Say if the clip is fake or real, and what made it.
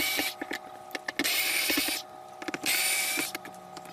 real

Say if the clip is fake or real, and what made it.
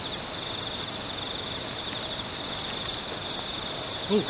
real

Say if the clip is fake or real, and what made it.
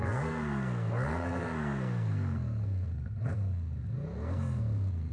fake, codec, SNAC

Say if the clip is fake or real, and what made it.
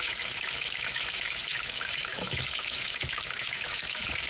fake, autoencoder, DAC-VAE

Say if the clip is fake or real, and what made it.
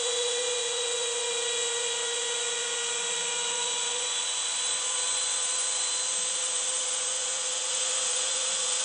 fake, vocoder, Vocos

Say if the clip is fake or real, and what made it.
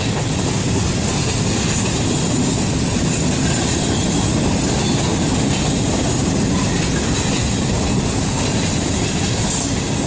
real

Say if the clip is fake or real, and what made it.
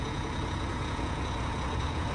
fake, vocoder, Vocos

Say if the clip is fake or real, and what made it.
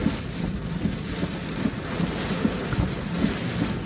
real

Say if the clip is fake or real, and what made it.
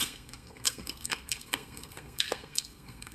fake, codec, SNAC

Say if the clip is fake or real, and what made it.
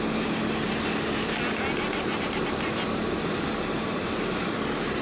real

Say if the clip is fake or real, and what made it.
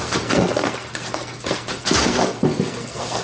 fake, codec, SNAC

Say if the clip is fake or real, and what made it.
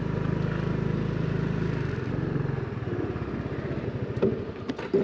real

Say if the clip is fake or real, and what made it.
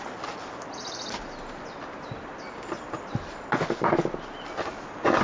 real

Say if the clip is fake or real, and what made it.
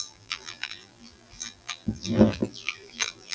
fake, vocoder, BigVGAN v2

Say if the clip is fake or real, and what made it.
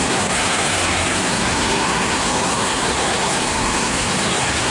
fake, codec, SNAC